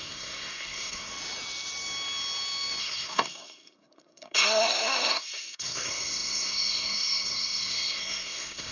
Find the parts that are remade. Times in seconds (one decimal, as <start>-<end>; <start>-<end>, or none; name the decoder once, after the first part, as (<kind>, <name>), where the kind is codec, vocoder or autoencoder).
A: 0.0-1.1 (codec, SNAC); 2.8-8.7